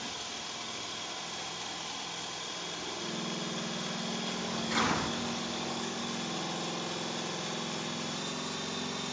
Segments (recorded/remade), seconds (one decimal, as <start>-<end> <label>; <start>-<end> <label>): 0.0-4.4 recorded; 4.4-6.0 remade; 6.0-9.1 recorded